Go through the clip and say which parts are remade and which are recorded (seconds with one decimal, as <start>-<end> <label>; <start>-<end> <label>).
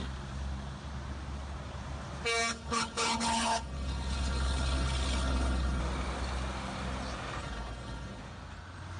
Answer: 0.0-2.5 recorded; 2.5-5.8 remade; 5.8-7.4 recorded; 7.4-8.2 remade; 8.2-9.0 recorded